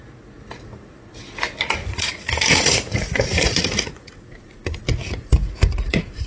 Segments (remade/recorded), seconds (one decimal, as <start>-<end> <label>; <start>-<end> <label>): 0.0-1.8 recorded; 1.8-4.6 remade; 4.6-5.0 recorded; 5.0-6.3 remade